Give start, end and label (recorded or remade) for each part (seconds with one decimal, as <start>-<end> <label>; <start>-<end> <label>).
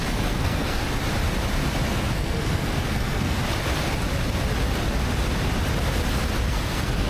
0.0-0.8 remade; 0.8-1.9 recorded; 1.9-3.4 remade; 3.4-6.5 recorded; 6.5-7.1 remade